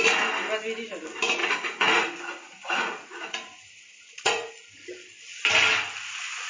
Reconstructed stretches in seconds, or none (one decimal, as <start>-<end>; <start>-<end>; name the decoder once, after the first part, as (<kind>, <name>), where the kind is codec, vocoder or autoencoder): 1.4-4.5 (vocoder, Vocos)